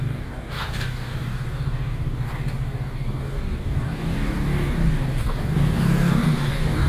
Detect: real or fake fake